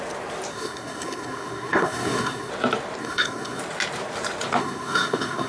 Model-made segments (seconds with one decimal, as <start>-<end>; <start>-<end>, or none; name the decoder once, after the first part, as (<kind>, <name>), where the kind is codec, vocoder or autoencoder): 0.5-2.5 (codec, SNAC); 3.0-3.6; 4.6-5.5